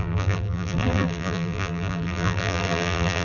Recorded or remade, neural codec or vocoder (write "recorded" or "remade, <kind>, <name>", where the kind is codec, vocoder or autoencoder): remade, vocoder, BigVGAN v2